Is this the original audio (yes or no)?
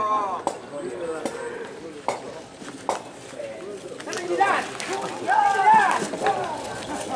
yes